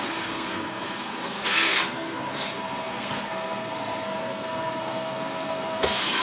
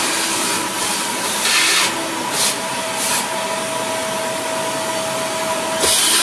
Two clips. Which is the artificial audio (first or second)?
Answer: first